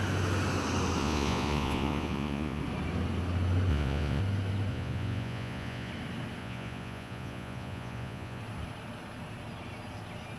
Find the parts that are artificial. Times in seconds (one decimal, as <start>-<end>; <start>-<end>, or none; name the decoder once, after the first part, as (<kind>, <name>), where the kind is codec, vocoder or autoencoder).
1.0-2.6 (vocoder, Vocos); 3.7-4.2; 4.7-5.9; 6.4-8.4